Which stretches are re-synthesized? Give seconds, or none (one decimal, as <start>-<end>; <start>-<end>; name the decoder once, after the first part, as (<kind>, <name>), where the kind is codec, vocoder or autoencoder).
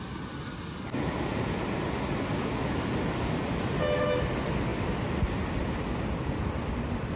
none